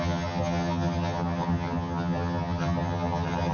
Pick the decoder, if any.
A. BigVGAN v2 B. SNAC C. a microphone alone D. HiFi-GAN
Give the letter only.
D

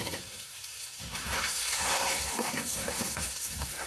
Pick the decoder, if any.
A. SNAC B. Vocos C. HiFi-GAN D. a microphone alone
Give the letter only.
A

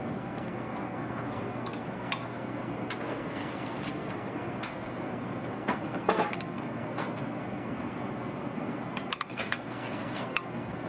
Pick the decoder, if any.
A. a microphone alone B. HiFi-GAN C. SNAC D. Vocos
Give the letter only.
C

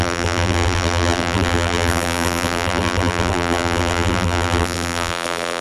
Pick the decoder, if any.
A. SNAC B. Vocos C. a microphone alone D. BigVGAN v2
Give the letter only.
D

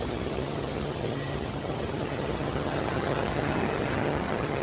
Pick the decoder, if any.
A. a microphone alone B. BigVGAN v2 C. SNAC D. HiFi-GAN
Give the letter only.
D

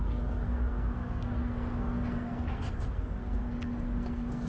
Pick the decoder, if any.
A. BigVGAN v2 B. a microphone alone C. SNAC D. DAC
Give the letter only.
C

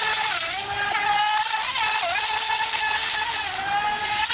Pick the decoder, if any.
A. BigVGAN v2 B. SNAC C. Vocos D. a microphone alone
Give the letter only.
D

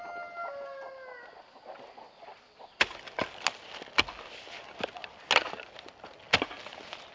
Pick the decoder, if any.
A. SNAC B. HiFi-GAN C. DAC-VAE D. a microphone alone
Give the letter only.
D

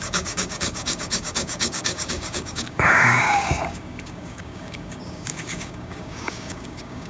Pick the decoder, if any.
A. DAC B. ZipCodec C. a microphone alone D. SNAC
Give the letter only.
A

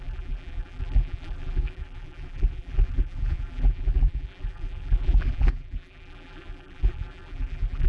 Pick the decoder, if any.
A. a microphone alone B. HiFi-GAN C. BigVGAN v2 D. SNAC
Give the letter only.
C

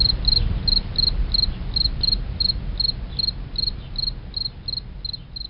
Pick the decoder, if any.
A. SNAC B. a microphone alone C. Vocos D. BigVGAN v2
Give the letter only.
B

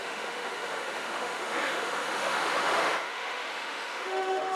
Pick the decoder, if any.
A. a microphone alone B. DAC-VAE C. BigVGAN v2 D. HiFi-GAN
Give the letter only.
B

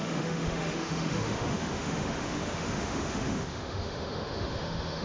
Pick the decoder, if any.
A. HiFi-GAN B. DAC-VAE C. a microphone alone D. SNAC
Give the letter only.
B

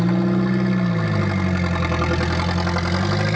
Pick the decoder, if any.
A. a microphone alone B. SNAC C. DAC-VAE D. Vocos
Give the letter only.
A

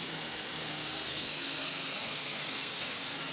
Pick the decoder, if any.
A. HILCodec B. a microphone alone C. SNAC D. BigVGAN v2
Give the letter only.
C